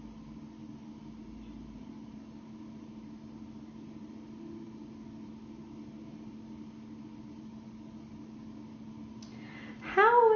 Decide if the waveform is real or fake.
real